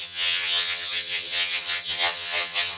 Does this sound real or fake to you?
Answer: fake